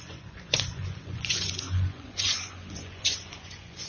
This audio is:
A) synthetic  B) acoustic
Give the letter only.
A